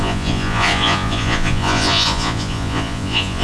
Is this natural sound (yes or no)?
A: no